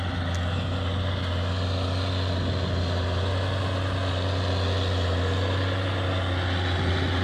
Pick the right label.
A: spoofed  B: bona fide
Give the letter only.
B